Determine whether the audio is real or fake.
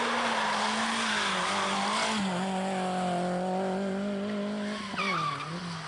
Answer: real